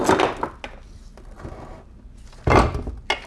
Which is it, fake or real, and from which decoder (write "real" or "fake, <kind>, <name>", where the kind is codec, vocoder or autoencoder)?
real